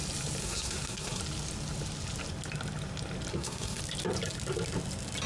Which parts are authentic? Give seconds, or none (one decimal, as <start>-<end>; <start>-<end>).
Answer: 0.0-0.4; 1.2-3.3; 3.8-5.3